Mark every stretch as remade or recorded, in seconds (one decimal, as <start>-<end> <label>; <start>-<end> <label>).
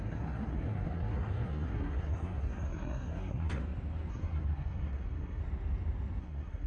0.0-3.6 remade; 3.6-4.1 recorded; 4.1-5.4 remade; 5.4-6.2 recorded; 6.2-6.7 remade